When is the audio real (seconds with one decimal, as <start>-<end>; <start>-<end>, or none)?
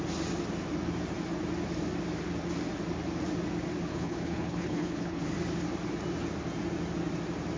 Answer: 0.0-3.9; 5.2-7.6